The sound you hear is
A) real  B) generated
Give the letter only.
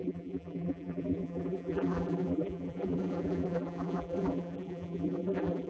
B